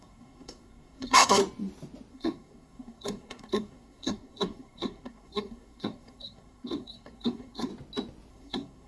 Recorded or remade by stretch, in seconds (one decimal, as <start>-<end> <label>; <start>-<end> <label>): 0.0-1.4 remade; 1.4-2.1 recorded; 2.1-7.7 remade; 7.7-8.3 recorded; 8.3-8.9 remade